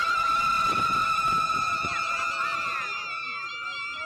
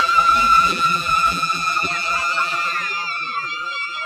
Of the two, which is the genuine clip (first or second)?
first